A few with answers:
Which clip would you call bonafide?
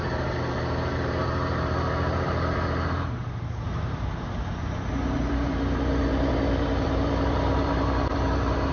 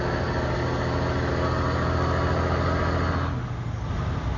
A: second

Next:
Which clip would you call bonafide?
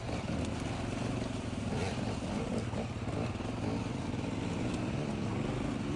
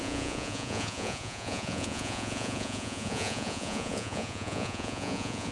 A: first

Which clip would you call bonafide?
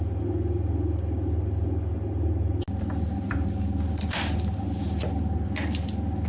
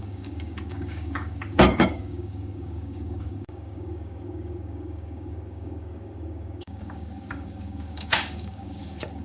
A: first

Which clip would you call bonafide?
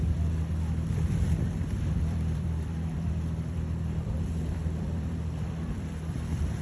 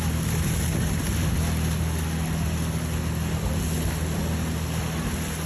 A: second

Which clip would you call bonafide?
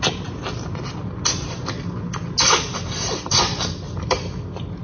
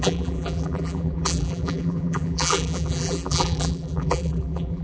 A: first